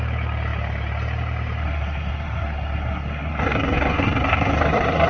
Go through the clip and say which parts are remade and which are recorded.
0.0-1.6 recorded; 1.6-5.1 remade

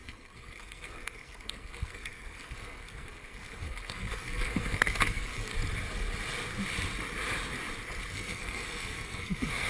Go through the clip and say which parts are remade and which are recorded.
0.0-5.5 remade; 5.5-8.1 recorded; 8.1-9.7 remade

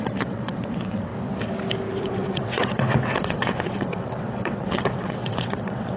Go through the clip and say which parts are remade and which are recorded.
0.0-1.1 remade; 1.1-2.0 recorded; 2.0-6.0 remade

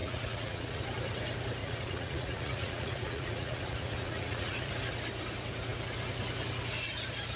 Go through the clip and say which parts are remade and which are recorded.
0.0-0.8 remade; 0.8-1.6 recorded; 1.6-4.7 remade; 4.7-7.4 recorded

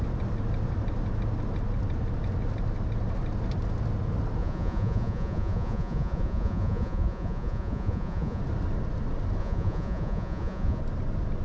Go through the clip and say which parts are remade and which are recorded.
0.0-4.4 recorded; 4.4-8.4 remade; 8.4-9.4 recorded; 9.4-10.8 remade; 10.8-11.4 recorded

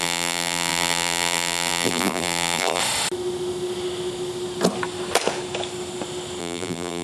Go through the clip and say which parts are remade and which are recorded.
0.0-2.8 remade; 2.8-6.4 recorded; 6.4-7.0 remade